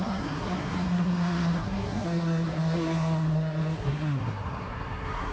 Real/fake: fake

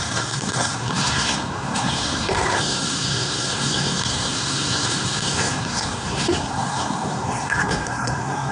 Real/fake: fake